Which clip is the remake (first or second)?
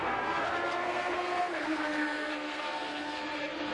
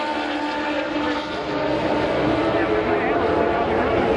first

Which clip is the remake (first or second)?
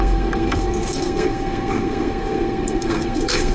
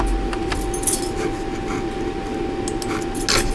first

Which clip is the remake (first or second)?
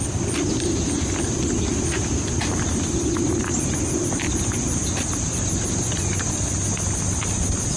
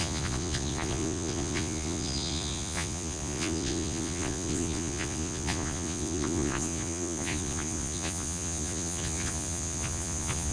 second